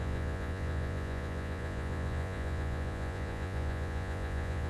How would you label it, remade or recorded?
remade